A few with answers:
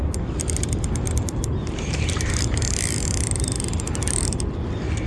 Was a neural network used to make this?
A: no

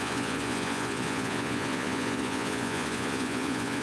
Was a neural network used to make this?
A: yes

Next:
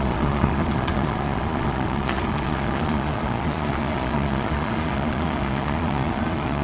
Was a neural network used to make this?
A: yes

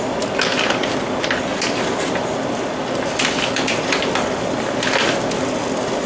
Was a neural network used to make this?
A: no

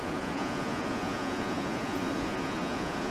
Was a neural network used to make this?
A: yes